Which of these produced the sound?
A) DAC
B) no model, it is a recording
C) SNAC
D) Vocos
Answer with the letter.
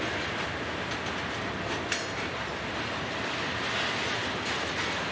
B